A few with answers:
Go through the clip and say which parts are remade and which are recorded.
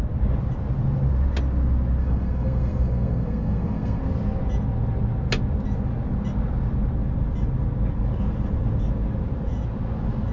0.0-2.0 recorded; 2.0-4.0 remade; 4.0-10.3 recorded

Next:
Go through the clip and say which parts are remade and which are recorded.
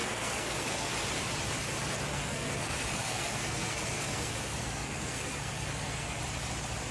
0.0-0.9 remade; 0.9-2.1 recorded; 2.1-6.2 remade; 6.2-6.9 recorded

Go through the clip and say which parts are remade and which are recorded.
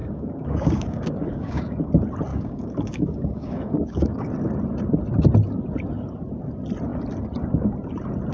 0.0-1.9 remade; 1.9-2.3 recorded; 2.3-4.3 remade; 4.3-8.3 recorded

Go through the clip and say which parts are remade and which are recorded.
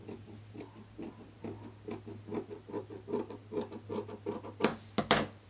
0.0-5.5 recorded